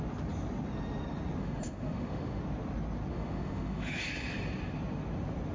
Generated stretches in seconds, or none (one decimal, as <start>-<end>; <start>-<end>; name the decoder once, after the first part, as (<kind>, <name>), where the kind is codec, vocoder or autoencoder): 1.4-2.4 (autoencoder, DAC-VAE); 3.1-4.0

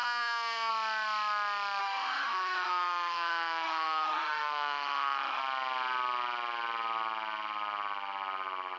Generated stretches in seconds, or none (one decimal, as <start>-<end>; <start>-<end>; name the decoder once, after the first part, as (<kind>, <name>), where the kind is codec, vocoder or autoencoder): 0.0-0.7 (autoencoder, DAC-VAE); 1.8-5.4

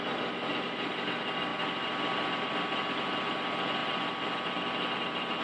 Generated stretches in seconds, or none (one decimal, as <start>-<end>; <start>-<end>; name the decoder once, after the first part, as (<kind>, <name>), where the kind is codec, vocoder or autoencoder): none

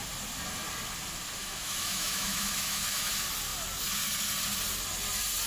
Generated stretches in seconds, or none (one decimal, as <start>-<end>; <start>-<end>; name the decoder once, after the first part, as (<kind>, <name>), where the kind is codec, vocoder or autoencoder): 1.4-3.1 (autoencoder, DAC-VAE)